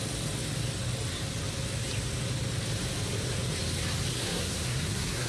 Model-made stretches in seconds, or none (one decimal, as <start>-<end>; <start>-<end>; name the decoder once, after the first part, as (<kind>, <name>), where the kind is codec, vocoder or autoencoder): 4.1-5.3 (codec, SNAC)